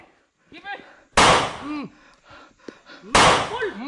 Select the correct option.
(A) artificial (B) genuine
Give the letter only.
B